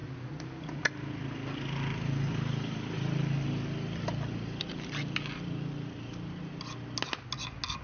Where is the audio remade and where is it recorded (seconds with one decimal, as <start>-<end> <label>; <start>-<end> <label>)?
0.0-7.8 recorded